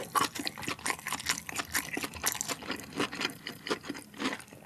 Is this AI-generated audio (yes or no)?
no